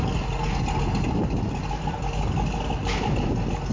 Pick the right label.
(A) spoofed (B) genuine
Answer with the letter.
B